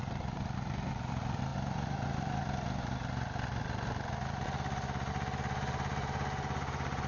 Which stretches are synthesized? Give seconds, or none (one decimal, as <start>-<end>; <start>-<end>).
0.0-1.5; 5.1-7.1